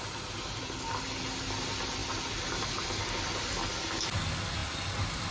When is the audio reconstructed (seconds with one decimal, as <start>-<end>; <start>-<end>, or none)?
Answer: none